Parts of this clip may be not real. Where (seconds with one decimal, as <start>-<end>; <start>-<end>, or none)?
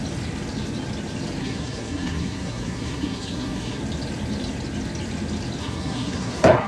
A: 1.4-3.8; 5.6-6.7